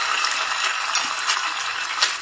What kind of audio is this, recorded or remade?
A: recorded